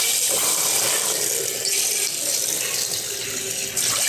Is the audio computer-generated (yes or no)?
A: no